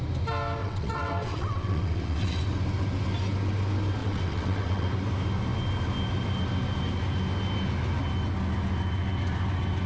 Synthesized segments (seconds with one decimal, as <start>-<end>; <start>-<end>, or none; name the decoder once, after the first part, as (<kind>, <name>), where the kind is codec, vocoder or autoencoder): 0.6-2.4 (vocoder, WaveNeXt); 4.0-4.9